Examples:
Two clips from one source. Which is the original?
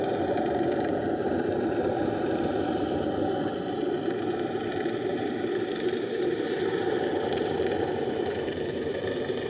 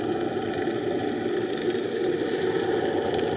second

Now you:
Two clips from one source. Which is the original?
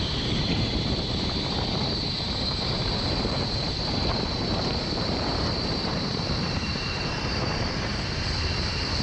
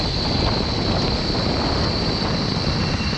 second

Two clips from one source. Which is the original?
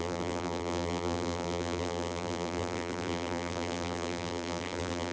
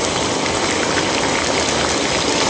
second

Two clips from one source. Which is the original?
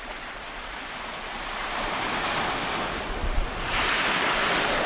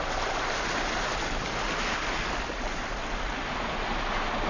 second